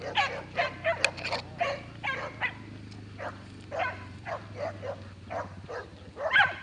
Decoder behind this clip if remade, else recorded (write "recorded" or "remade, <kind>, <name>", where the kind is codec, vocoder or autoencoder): recorded